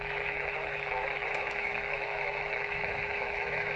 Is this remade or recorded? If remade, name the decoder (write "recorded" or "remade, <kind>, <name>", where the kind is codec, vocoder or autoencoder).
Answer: remade, autoencoder, DAC-VAE